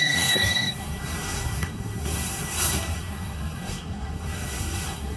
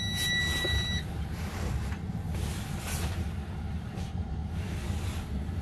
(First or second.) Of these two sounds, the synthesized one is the first